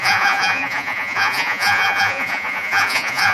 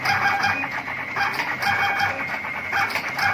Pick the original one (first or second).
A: second